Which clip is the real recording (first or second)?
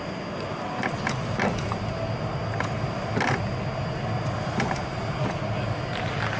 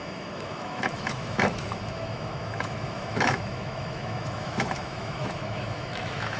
first